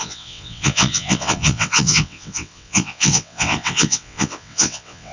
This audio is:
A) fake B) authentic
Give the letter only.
A